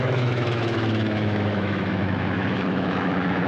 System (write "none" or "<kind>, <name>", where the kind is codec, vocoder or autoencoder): autoencoder, DAC-VAE